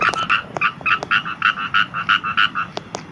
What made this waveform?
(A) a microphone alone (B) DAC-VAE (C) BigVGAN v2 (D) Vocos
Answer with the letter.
A